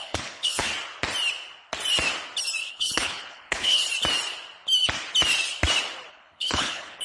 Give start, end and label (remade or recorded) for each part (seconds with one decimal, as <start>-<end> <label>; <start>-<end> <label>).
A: 0.0-0.7 remade; 0.7-2.7 recorded; 2.7-3.8 remade; 3.8-6.1 recorded; 6.1-7.0 remade